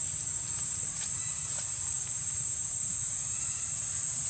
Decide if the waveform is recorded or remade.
remade